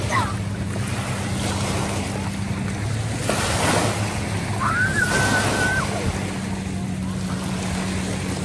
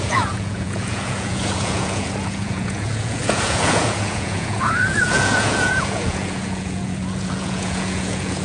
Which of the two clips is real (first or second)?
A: first